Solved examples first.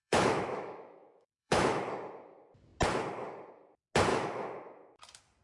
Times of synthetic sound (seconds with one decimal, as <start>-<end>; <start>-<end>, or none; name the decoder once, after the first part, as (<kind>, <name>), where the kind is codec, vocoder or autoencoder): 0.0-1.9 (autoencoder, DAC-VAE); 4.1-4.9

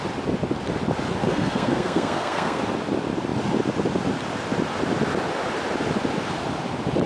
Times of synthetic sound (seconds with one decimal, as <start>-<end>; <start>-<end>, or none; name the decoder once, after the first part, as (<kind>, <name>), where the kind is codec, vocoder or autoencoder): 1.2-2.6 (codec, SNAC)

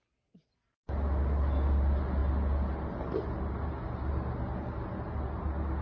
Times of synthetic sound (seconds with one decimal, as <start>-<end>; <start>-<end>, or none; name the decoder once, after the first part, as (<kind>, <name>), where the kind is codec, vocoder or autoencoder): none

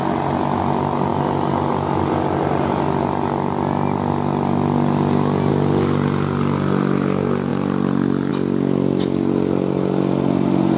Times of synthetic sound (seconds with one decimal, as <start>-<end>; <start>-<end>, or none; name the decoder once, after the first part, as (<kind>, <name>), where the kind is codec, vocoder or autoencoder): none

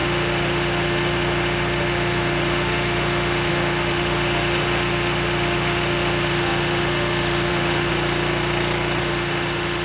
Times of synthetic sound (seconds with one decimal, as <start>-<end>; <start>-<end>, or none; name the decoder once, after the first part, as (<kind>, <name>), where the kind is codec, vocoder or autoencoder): 0.0-7.9 (autoencoder, DAC-VAE); 9.0-9.8

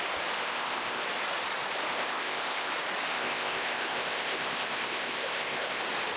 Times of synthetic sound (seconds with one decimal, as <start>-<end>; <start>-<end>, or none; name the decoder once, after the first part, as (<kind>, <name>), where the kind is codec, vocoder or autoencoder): 0.4-1.0 (codec, ZipCodec); 1.9-2.7; 3.1-5.8

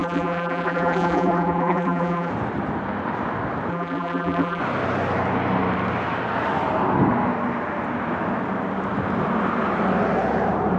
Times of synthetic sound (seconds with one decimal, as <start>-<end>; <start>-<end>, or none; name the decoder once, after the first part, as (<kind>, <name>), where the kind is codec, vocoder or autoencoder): 0.0-2.3 (vocoder, BigVGAN v2); 3.7-4.6